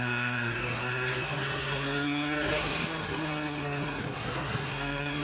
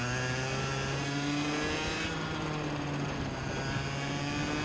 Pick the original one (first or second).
second